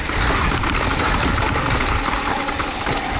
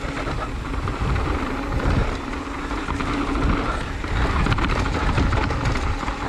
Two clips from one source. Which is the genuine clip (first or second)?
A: second